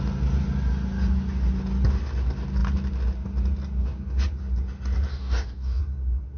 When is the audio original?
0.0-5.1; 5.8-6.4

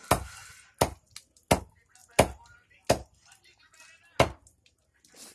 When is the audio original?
0.0-5.3

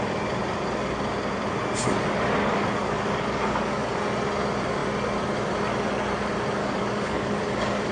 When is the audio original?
0.0-2.4; 4.0-6.6

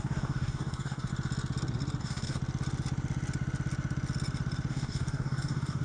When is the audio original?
1.1-2.0; 2.4-4.7

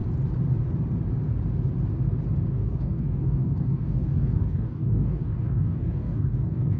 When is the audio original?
0.0-2.5

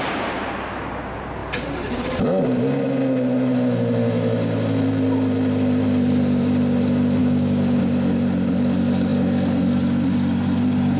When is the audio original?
0.0-7.2; 7.8-11.0

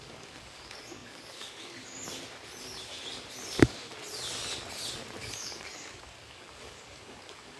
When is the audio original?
2.0-3.6; 4.0-5.2